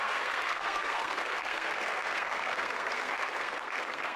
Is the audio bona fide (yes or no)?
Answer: no